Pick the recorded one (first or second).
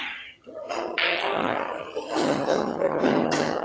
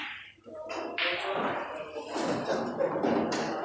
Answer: second